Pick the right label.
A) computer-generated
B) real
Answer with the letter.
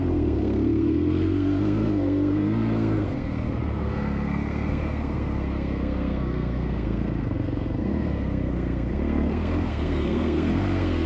A